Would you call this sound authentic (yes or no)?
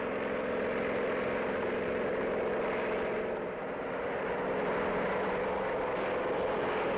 no